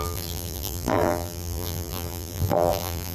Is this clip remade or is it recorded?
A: remade